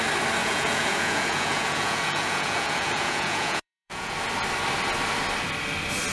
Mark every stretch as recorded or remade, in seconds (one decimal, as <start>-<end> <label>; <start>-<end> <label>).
0.0-0.4 recorded; 0.4-4.1 remade; 4.1-6.1 recorded

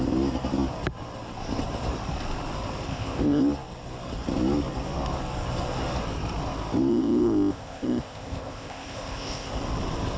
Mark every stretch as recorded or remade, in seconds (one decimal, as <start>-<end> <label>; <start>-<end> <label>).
0.0-2.9 recorded; 2.9-3.4 remade; 3.4-6.9 recorded; 6.9-9.5 remade; 9.5-10.2 recorded

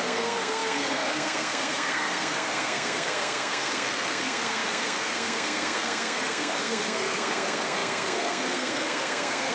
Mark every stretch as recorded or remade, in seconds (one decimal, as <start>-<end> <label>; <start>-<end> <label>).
0.0-9.5 remade

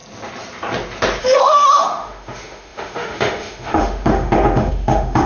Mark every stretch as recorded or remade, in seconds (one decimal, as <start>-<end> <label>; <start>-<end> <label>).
0.0-1.2 recorded; 1.2-5.3 remade

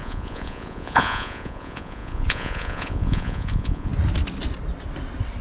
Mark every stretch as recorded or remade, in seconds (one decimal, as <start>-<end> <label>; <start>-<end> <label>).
0.0-3.9 remade; 3.9-5.4 recorded

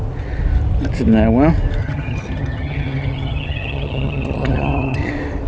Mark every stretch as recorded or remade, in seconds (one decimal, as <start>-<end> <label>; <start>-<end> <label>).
0.0-1.8 recorded; 1.8-5.1 remade; 5.1-5.5 recorded

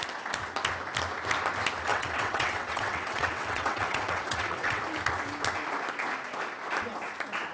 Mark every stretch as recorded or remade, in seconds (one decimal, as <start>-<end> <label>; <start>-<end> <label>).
0.0-1.9 recorded; 1.9-4.8 remade; 4.8-7.5 recorded

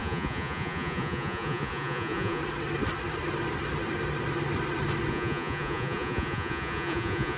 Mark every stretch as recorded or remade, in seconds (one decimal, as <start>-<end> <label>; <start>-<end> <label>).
0.0-2.4 remade; 2.4-5.1 recorded; 5.1-7.4 remade